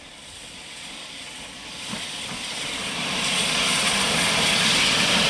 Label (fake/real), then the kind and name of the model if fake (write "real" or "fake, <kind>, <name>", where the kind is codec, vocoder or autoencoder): real